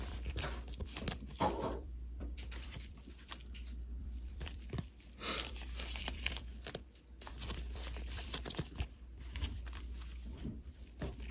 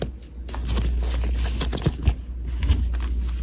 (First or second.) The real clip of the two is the second